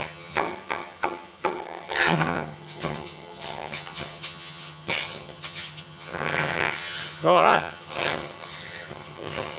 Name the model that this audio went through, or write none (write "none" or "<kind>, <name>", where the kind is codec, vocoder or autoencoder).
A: vocoder, HiFi-GAN